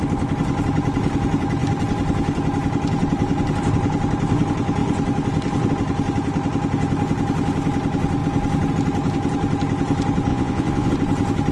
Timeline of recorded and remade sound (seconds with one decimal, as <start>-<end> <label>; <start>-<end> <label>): 0.0-10.3 recorded; 10.3-10.9 remade; 10.9-11.5 recorded